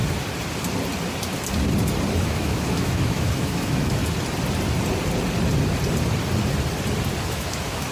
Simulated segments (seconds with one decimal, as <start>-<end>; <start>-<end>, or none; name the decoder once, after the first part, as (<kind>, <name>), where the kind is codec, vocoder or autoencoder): 2.2-4.0 (autoencoder, DAC-VAE); 7.2-7.9